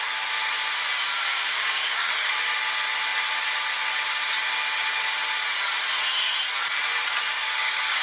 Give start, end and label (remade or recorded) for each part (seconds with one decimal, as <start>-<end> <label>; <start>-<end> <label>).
0.0-1.2 recorded; 1.2-2.3 remade; 2.3-7.4 recorded; 7.4-8.0 remade